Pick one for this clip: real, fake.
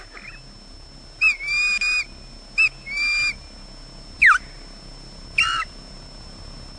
real